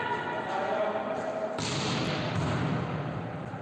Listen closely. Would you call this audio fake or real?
real